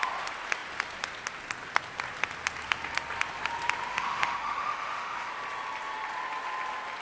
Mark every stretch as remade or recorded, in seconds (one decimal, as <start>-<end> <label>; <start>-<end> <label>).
0.0-3.9 recorded; 3.9-5.3 remade; 5.3-7.0 recorded